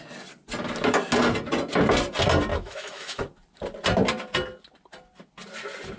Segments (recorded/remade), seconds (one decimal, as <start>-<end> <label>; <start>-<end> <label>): 0.0-2.5 recorded; 2.5-3.2 remade; 3.2-6.0 recorded